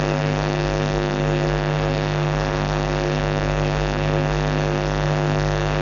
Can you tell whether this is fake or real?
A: fake